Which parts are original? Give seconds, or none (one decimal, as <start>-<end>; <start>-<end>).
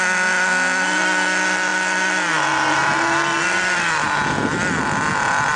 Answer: 0.0-5.6